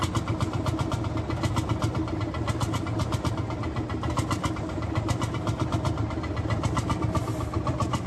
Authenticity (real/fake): real